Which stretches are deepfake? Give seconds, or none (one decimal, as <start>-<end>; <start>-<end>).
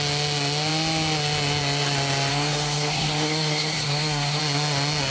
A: 2.3-4.4